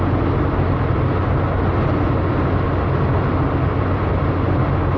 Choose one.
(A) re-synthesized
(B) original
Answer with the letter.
B